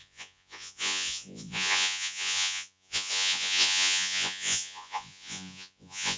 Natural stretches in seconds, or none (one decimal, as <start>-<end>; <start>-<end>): none